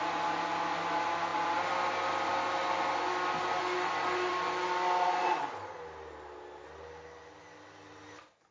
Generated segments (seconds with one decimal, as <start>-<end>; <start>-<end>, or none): none